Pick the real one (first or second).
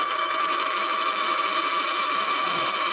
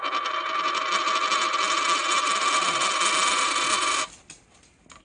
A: second